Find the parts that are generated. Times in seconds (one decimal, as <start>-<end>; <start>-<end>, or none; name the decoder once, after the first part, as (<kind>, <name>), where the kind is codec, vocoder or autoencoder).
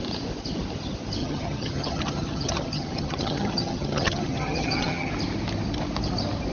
1.2-5.1 (vocoder, HiFi-GAN)